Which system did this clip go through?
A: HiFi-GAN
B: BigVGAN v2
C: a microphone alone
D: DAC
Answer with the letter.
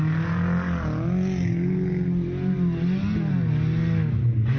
C